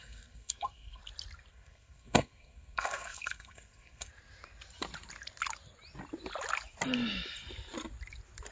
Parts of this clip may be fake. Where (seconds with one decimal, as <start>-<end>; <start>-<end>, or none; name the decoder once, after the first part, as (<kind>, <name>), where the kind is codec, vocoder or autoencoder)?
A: 0.0-1.0 (codec, SNAC); 1.5-4.1